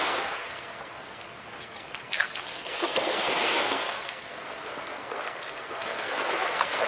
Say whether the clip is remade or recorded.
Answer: remade